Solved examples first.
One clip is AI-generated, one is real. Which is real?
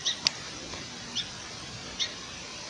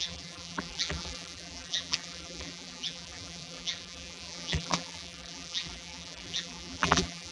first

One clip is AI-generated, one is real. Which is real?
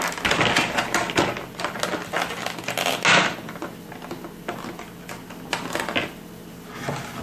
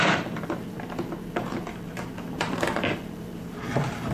first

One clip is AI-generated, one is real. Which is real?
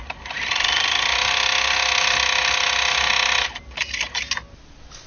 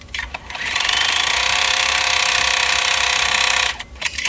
first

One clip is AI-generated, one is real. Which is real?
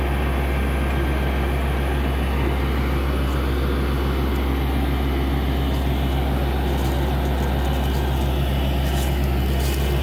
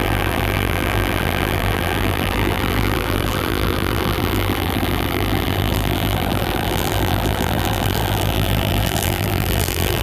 first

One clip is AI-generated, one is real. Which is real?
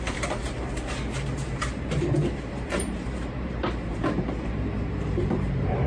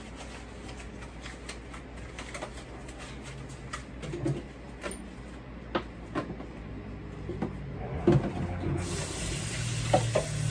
second